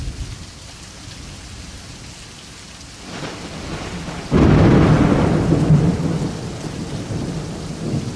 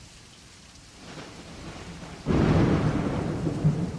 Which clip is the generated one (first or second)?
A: second